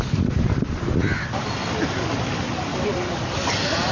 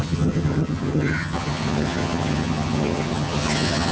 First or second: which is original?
first